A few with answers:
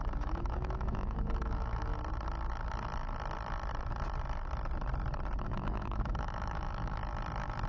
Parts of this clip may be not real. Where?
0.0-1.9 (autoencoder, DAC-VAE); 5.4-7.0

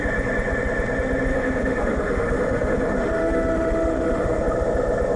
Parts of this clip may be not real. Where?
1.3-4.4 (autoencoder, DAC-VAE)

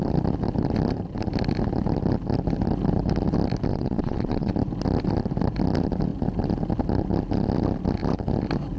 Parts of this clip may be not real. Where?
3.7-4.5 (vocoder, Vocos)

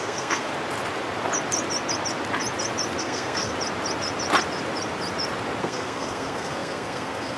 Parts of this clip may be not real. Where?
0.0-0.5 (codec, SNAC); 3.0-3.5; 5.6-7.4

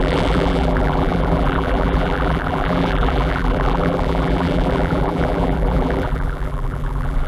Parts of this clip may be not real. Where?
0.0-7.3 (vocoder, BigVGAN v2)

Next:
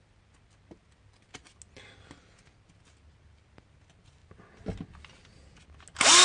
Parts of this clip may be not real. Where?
none